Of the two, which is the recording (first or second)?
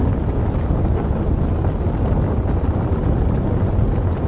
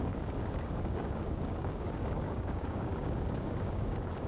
first